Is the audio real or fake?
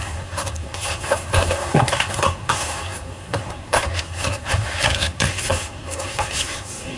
fake